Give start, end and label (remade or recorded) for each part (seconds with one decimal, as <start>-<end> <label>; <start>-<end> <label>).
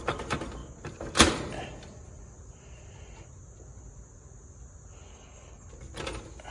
0.0-5.1 recorded; 5.1-5.7 remade; 5.7-6.5 recorded